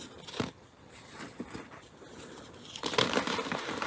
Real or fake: real